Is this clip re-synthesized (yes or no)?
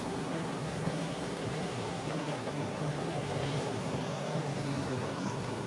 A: yes